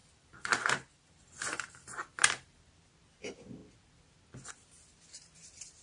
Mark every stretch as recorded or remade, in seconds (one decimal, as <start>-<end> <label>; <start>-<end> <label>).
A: 0.0-2.7 remade; 2.7-5.8 recorded